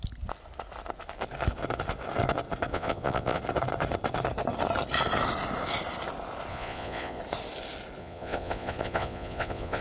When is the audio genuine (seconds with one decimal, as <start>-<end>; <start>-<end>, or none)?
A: 0.0-2.7; 3.4-6.5; 7.2-8.0